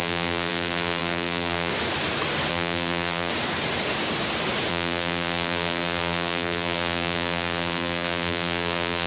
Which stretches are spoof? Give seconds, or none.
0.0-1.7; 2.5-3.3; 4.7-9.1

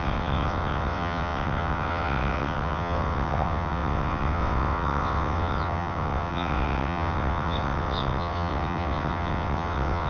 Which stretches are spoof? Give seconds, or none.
0.0-10.1

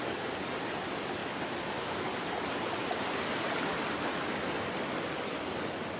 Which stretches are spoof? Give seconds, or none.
none

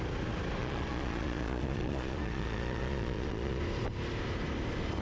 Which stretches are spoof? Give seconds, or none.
0.6-3.6

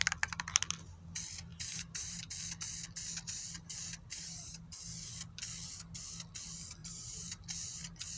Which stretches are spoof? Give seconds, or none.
1.5-2.3; 4.1-4.6; 6.8-7.4

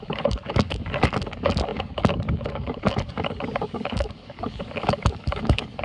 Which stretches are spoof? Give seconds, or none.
0.0-5.8